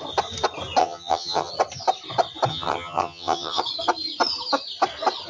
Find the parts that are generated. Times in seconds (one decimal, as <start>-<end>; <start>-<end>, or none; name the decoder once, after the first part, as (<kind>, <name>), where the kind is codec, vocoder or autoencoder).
0.8-1.5 (vocoder, HiFi-GAN); 2.5-3.6